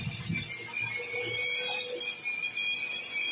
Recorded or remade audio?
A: recorded